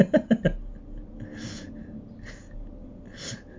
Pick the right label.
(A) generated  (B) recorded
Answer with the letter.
B